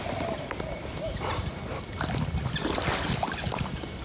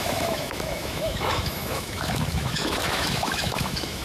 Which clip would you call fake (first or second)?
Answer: second